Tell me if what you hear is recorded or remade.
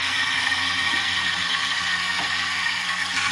remade